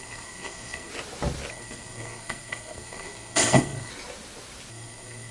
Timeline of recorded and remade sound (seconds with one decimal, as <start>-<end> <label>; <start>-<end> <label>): 0.0-0.9 remade; 0.9-1.5 recorded; 1.5-3.9 remade; 3.9-4.7 recorded; 4.7-5.3 remade